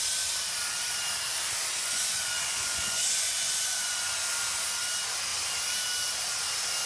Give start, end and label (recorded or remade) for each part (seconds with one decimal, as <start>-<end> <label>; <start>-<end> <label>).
0.0-1.8 recorded; 1.8-4.1 remade; 4.1-6.9 recorded